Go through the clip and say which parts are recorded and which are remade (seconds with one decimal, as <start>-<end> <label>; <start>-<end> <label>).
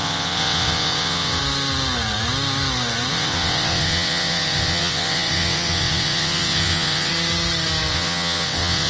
0.0-1.4 remade; 1.4-3.1 recorded; 3.1-7.1 remade; 7.1-7.9 recorded; 7.9-8.9 remade